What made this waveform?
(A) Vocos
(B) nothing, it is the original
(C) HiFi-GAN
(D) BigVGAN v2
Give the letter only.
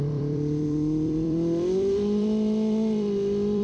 D